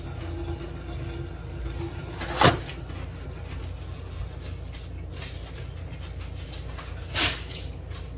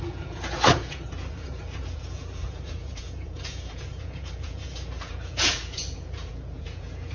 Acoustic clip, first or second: first